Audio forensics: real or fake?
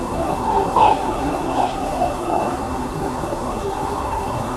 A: fake